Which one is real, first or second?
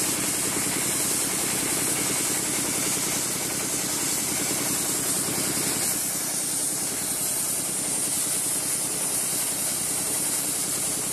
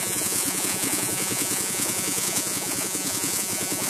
first